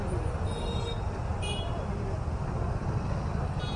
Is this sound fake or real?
real